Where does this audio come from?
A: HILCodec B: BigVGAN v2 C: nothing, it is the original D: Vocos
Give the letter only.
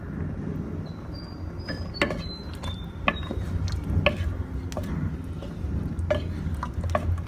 C